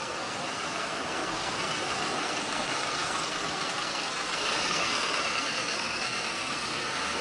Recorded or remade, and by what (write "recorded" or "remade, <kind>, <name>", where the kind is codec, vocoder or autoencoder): remade, codec, SNAC